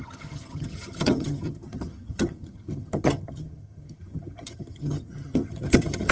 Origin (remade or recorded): remade